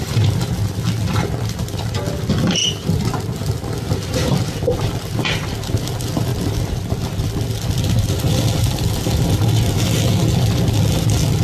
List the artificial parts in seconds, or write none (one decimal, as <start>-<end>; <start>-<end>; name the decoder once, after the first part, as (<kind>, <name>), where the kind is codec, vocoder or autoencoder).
0.0-2.6 (vocoder, BigVGAN v2); 3.9-11.4